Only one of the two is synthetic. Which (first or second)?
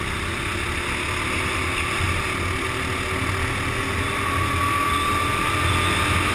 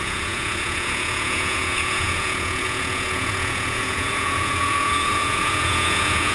second